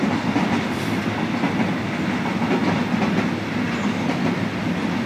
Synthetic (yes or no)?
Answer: no